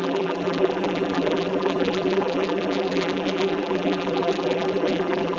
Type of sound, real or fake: fake